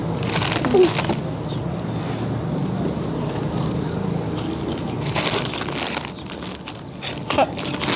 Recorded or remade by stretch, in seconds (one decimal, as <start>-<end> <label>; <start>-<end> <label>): 0.0-8.0 recorded